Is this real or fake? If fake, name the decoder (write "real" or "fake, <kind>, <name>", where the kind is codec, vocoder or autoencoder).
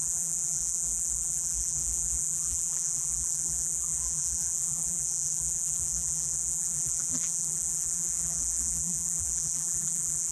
fake, vocoder, BigVGAN v2